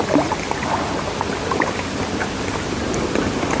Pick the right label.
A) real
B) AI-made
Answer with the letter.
A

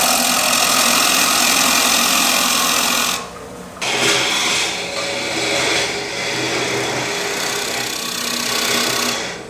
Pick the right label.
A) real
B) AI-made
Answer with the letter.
A